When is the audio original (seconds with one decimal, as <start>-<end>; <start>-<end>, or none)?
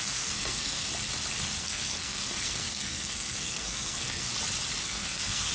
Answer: 0.9-1.6; 4.3-4.8